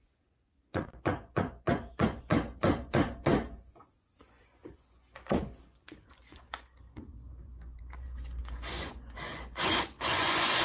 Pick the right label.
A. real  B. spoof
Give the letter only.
B